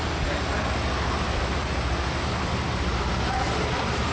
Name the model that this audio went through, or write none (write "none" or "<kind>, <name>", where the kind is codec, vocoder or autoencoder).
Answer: none